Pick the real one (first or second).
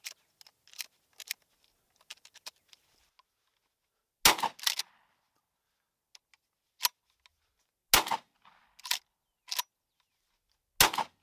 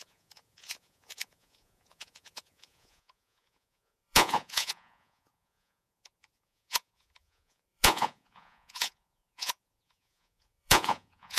first